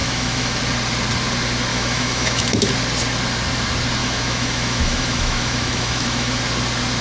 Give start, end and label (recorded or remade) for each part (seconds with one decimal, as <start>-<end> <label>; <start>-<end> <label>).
0.0-0.6 remade; 0.6-1.7 recorded; 1.7-2.7 remade; 2.7-4.0 recorded; 4.0-6.4 remade; 6.4-7.0 recorded